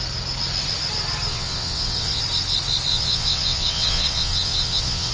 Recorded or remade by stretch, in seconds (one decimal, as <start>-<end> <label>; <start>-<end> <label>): 0.0-1.3 recorded; 1.3-2.2 remade; 2.2-2.9 recorded; 2.9-5.1 remade